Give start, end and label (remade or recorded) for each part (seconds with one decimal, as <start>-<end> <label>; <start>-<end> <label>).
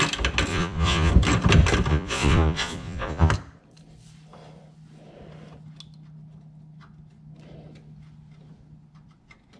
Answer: 0.0-0.5 recorded; 0.5-1.1 remade; 1.1-1.9 recorded; 1.9-3.3 remade; 3.3-9.6 recorded